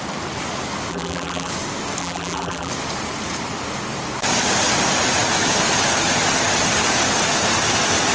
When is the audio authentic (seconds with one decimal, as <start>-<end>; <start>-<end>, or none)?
0.0-0.9; 1.5-2.0; 2.7-8.1